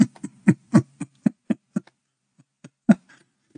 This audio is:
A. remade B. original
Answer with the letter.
B